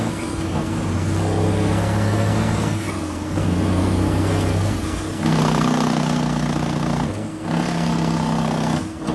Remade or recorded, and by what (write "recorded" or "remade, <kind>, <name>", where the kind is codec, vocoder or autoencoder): remade, codec, SNAC